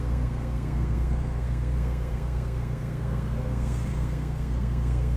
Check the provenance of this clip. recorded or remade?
remade